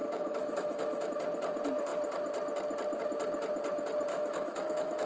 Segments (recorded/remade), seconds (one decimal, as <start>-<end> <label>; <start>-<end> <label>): 0.0-1.1 remade; 1.1-4.1 recorded; 4.1-5.1 remade